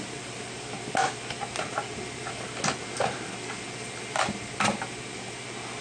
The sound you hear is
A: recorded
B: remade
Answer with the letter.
A